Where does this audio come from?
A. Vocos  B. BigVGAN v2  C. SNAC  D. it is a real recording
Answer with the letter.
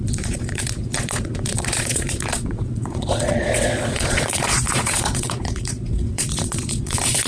A